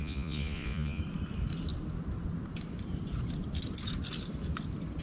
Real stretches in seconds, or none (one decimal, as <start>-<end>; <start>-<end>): 1.0-5.0